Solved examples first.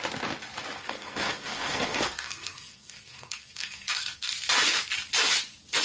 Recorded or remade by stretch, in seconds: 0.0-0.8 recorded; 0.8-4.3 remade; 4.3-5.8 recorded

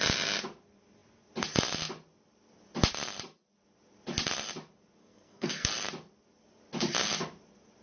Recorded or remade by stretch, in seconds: 0.0-5.0 recorded; 5.0-5.7 remade; 5.7-7.8 recorded

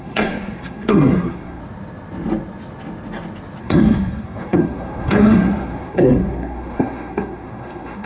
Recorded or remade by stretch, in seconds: 0.0-1.6 remade; 1.6-3.6 recorded; 3.6-8.1 remade

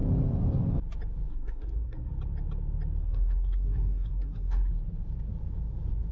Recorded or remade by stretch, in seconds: 0.0-1.3 recorded; 1.3-2.1 remade; 2.1-3.0 recorded; 3.0-4.7 remade; 4.7-6.1 recorded

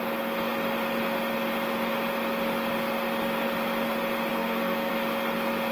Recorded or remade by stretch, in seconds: 0.0-4.3 recorded; 4.3-4.9 remade; 4.9-5.7 recorded